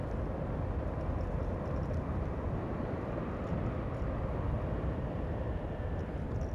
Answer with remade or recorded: recorded